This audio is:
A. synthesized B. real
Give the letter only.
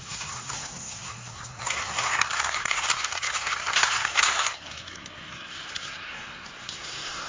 A